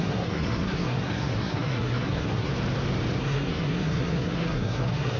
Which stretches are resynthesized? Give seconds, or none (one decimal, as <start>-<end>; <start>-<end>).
0.0-2.5; 3.2-5.2